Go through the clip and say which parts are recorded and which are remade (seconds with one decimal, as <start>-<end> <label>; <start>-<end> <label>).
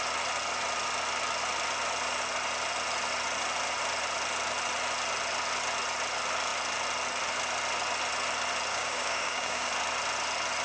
0.0-8.7 recorded; 8.7-9.7 remade; 9.7-10.6 recorded